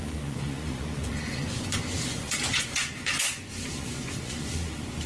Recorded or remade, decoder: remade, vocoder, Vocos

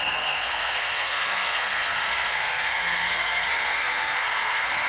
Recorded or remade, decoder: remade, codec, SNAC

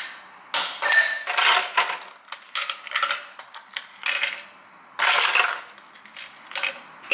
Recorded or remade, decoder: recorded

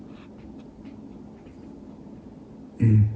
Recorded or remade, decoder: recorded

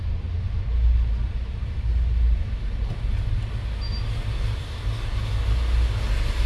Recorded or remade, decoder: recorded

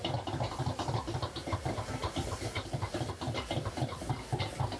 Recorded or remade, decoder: recorded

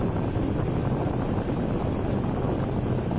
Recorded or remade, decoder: recorded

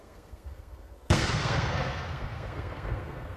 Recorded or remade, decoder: remade, codec, SNAC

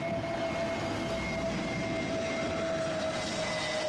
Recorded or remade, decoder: recorded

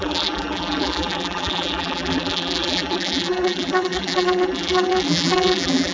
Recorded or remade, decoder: remade, vocoder, BigVGAN v2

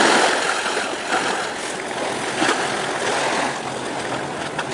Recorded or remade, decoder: recorded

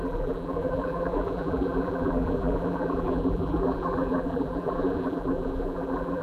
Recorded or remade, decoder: remade, vocoder, BigVGAN v2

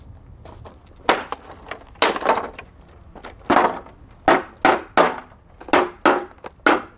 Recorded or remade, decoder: recorded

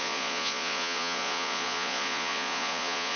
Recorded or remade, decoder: remade, vocoder, Vocos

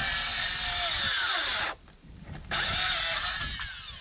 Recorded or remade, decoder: recorded